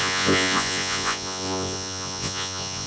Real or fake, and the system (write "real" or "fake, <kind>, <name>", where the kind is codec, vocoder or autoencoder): fake, vocoder, Vocos